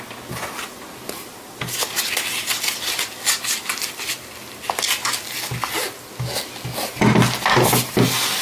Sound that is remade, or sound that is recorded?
recorded